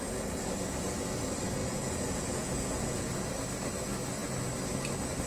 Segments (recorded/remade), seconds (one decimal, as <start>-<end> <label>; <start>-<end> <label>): 0.0-1.6 recorded; 1.6-3.1 remade; 3.1-5.3 recorded